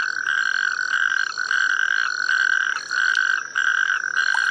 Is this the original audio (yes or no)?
yes